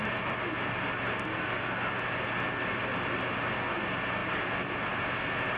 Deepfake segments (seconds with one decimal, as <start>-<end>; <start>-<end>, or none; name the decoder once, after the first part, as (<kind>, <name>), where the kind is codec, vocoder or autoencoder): none